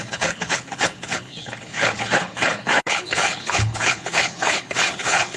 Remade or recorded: remade